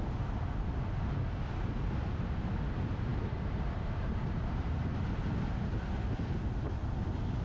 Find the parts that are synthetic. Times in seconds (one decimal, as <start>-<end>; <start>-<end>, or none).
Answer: 3.1-4.8